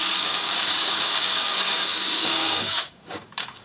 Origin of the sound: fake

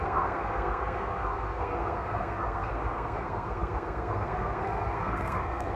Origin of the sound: fake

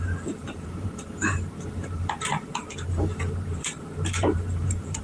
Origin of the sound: fake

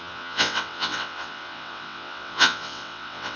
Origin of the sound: fake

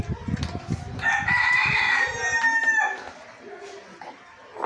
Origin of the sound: real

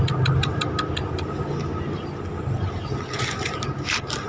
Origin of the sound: real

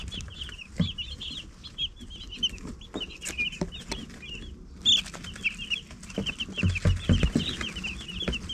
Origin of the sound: real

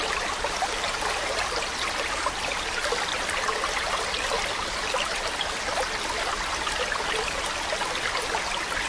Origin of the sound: real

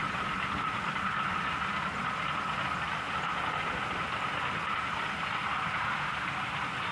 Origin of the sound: real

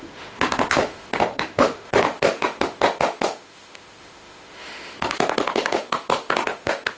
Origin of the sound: fake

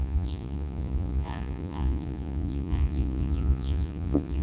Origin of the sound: fake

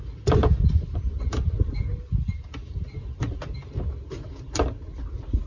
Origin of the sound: real